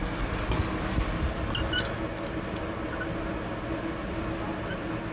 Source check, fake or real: real